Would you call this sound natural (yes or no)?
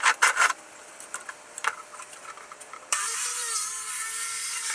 no